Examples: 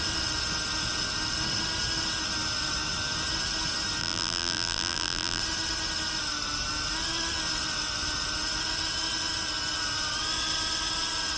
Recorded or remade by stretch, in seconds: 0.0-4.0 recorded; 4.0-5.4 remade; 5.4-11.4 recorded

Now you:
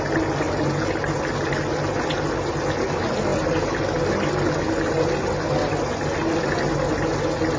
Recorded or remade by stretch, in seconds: 0.0-7.6 recorded

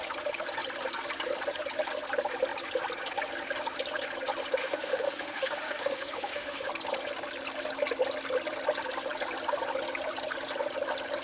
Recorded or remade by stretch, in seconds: 0.0-4.6 recorded; 4.6-6.7 remade; 6.7-11.2 recorded

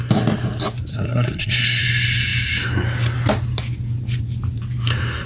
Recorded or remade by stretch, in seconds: 0.0-0.9 recorded; 0.9-1.8 remade; 1.8-5.3 recorded